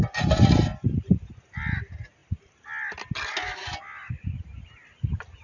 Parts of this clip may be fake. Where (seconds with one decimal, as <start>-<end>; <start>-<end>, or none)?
0.7-1.3